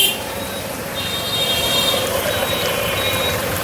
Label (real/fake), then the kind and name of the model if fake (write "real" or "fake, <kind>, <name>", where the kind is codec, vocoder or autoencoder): fake, vocoder, BigVGAN v2